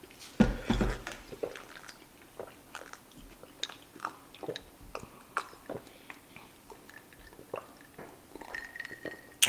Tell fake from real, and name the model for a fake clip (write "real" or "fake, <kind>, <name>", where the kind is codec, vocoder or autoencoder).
real